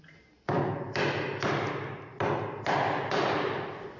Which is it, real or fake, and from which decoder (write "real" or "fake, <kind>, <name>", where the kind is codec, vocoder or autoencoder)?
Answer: real